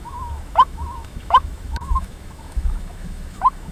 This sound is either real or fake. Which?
fake